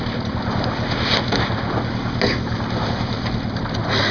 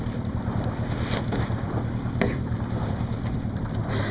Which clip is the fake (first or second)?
second